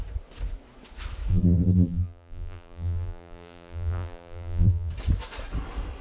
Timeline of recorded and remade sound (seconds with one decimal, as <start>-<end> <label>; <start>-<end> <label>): 0.0-1.3 recorded; 1.3-4.9 remade; 4.9-6.0 recorded